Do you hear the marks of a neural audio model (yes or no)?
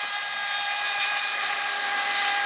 no